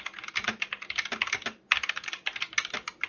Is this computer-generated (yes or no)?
no